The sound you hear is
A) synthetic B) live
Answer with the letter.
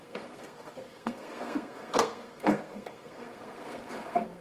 A